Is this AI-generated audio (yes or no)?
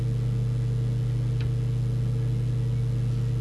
no